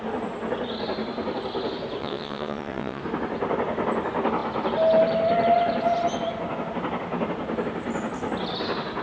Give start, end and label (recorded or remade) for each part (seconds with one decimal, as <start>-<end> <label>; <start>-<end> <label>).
0.0-2.0 recorded; 2.0-3.0 remade; 3.0-9.0 recorded